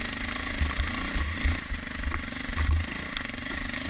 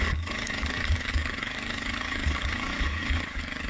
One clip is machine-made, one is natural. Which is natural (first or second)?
first